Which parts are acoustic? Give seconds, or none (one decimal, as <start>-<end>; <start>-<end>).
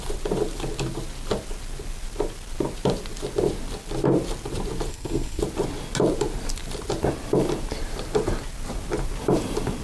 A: 0.0-4.9; 5.4-9.8